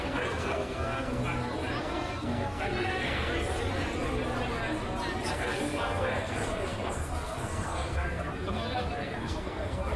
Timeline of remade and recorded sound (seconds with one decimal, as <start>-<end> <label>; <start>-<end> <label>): 0.0-1.2 remade; 1.2-1.8 recorded; 1.8-3.3 remade; 3.3-5.3 recorded; 5.3-10.0 remade